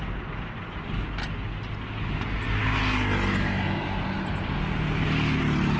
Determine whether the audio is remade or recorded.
recorded